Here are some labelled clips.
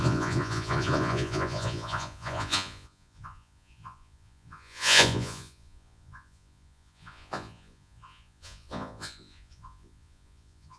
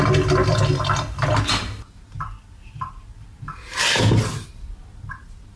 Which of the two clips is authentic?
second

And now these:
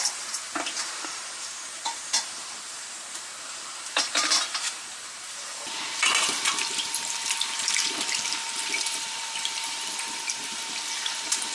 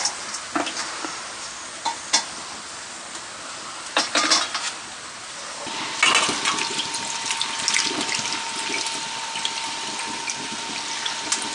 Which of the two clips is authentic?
second